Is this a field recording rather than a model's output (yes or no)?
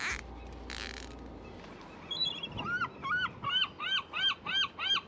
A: yes